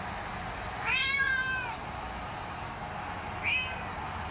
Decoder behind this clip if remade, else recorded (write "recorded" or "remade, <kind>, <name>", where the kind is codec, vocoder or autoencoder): recorded